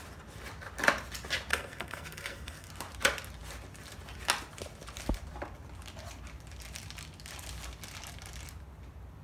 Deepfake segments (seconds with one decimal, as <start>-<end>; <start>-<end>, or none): 1.5-2.7